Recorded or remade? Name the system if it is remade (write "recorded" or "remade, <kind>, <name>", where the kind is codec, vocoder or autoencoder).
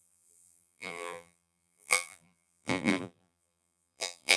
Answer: remade, vocoder, BigVGAN v2